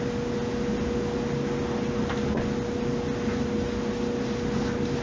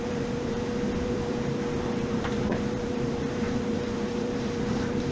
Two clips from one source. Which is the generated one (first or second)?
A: second